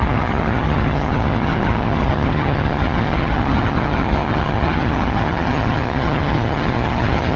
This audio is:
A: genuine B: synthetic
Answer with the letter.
B